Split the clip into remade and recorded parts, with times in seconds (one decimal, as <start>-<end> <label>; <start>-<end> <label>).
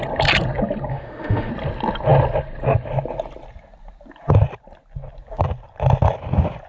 0.0-0.9 recorded; 0.9-1.5 remade; 1.5-6.7 recorded